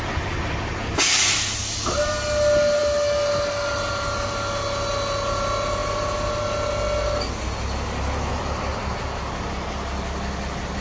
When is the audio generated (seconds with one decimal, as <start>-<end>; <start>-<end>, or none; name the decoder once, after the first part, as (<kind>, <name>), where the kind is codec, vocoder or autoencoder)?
none